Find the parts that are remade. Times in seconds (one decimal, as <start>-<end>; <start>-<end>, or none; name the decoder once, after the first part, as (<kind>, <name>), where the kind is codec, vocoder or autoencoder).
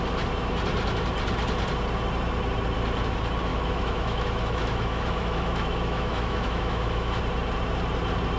3.5-7.2 (autoencoder, DAC-VAE)